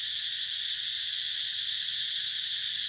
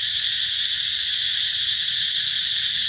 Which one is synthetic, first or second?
second